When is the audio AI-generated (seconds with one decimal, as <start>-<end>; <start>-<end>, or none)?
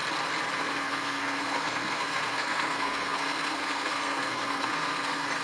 0.6-5.4